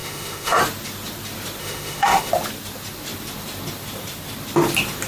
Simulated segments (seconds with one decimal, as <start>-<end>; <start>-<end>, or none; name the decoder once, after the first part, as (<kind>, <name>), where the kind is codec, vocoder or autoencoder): 0.0-0.6 (autoencoder, DAC-VAE); 1.6-2.3